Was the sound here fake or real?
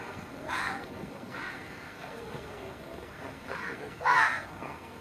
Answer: fake